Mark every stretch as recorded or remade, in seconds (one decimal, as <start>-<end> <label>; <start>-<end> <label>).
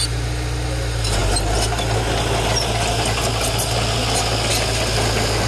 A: 0.0-5.5 recorded